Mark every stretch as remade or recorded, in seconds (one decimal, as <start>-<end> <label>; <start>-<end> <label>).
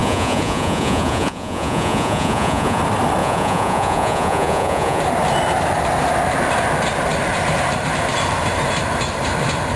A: 0.0-2.8 remade; 2.8-3.2 recorded; 3.2-5.0 remade; 5.0-9.8 recorded